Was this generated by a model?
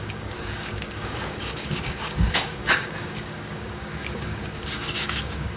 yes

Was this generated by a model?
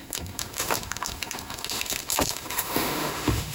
yes